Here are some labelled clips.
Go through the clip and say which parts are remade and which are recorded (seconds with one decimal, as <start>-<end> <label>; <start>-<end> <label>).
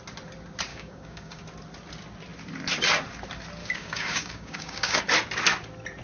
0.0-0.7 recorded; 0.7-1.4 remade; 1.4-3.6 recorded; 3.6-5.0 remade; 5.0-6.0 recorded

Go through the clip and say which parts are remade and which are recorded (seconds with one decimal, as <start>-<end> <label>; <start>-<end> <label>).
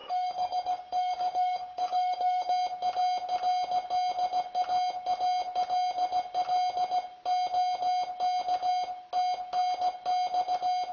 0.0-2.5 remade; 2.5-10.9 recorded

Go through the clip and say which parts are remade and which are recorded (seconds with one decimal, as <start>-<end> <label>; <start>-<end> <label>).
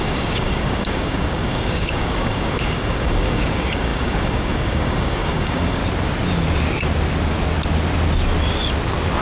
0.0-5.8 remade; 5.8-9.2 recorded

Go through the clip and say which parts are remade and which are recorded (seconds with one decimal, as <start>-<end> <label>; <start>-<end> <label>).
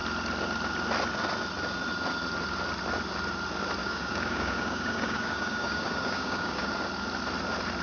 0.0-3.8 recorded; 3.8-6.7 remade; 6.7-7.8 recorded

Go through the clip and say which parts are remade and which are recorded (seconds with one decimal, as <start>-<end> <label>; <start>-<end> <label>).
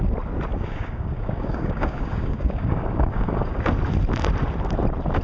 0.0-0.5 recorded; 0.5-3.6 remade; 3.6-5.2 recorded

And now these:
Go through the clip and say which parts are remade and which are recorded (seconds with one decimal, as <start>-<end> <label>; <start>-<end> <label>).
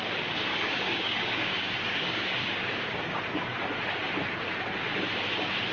0.0-0.5 recorded; 0.5-3.2 remade; 3.2-5.7 recorded